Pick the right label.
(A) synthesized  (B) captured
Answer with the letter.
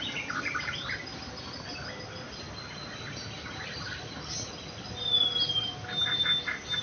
B